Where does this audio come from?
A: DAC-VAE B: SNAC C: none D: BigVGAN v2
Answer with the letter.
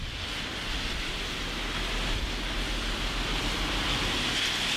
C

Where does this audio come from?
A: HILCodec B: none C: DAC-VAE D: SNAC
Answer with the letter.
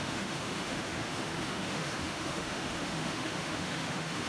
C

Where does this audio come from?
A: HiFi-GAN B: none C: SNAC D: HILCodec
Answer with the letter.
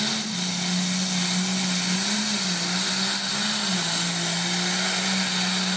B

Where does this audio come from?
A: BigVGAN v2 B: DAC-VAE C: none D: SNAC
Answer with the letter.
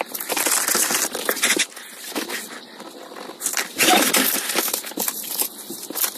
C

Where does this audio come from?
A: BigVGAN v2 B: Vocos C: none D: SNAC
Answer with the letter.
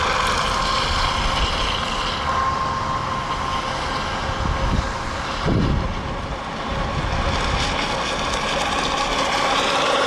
C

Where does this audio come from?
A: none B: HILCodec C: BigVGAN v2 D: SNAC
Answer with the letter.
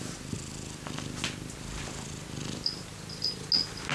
A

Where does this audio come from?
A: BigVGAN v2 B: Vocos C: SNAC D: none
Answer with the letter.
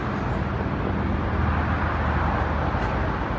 D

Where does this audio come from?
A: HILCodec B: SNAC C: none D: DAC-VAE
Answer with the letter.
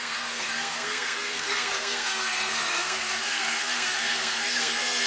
B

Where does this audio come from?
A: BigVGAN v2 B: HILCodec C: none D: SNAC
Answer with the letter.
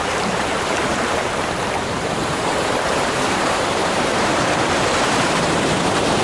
A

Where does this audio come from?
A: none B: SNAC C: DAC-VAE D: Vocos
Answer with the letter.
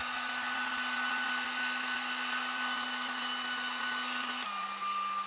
A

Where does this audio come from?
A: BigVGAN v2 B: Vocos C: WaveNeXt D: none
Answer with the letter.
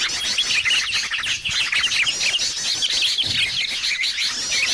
D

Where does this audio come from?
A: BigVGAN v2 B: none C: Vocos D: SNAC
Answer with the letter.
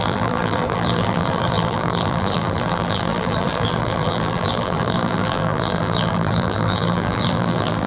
A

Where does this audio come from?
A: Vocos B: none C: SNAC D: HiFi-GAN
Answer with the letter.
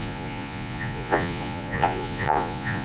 A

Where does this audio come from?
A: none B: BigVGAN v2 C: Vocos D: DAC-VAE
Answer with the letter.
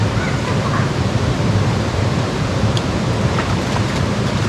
B